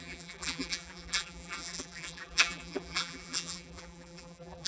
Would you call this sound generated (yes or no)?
yes